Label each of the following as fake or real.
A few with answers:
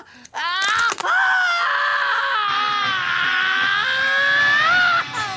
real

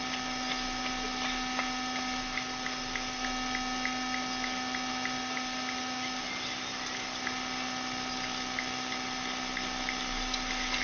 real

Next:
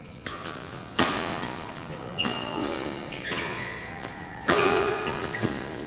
fake